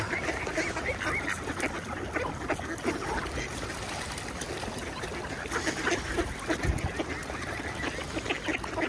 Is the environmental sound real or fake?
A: real